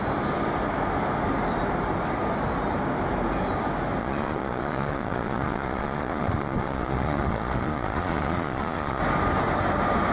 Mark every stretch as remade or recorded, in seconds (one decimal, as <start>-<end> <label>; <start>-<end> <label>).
0.0-4.0 recorded; 4.0-9.0 remade; 9.0-10.1 recorded